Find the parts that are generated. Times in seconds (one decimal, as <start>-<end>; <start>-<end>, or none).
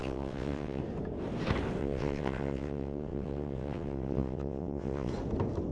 0.0-0.8; 1.8-5.1